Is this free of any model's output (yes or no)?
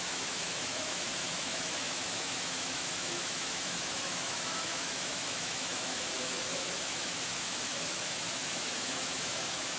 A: no